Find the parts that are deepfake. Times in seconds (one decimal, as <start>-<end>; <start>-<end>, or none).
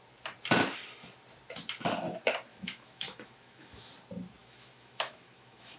2.5-3.9; 4.4-5.8